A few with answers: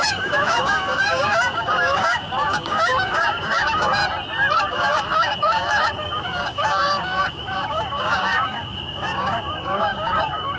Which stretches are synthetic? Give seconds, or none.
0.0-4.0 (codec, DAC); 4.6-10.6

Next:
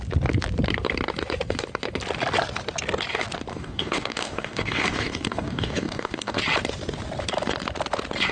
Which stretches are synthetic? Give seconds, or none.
3.5-6.4 (codec, DAC)

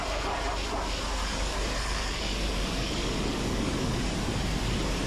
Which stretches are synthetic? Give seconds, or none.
1.2-4.3 (codec, DAC)